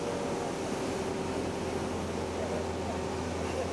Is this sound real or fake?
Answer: real